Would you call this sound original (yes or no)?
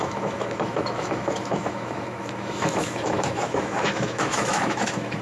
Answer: no